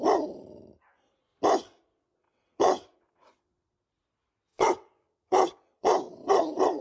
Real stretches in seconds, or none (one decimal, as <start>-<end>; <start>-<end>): 0.0-2.0; 3.7-4.5